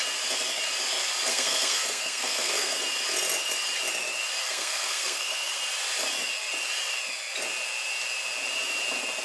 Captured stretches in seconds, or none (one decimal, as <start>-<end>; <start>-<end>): 0.0-1.3; 2.8-4.4; 5.6-9.2